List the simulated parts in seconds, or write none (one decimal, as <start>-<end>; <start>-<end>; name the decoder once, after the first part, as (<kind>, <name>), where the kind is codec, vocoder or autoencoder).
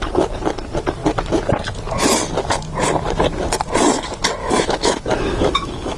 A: 4.4-6.0 (autoencoder, DAC-VAE)